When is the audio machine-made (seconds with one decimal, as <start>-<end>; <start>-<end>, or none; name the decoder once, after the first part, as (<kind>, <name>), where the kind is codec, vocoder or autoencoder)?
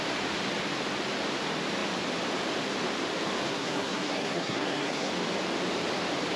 3.5-5.1 (codec, SNAC)